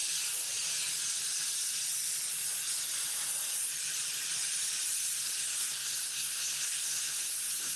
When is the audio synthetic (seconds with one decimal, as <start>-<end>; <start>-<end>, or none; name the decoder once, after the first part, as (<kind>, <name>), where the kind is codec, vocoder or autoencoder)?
5.2-7.8 (codec, SNAC)